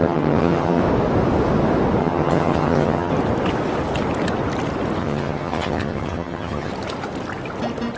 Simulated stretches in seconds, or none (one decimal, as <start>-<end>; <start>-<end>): 0.0-0.8; 2.0-3.1; 5.0-6.7